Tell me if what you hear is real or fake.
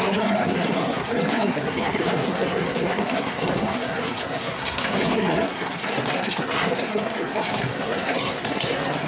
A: fake